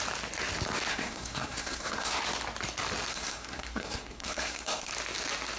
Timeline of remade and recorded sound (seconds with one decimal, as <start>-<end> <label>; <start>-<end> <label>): 0.0-0.9 recorded; 0.9-2.2 remade; 2.2-3.1 recorded; 3.1-4.9 remade; 4.9-5.6 recorded